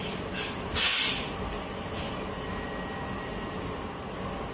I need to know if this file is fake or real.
real